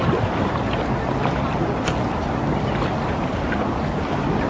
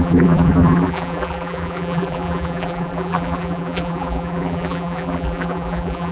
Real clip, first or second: first